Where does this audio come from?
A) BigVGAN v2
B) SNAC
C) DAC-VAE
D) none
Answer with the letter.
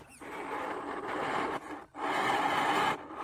D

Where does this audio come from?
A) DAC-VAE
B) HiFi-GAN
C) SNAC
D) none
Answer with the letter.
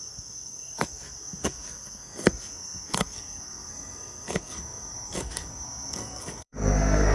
C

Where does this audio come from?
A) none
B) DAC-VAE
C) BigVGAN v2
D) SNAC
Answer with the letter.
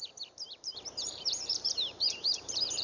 C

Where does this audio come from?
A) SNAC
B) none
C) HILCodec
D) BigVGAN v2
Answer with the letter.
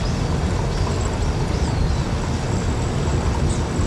B